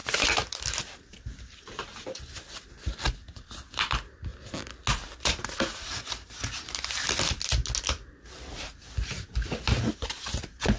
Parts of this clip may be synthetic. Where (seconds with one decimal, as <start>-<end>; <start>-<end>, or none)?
none